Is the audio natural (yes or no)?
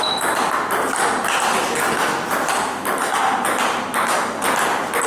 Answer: yes